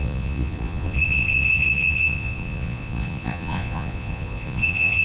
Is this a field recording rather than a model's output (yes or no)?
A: no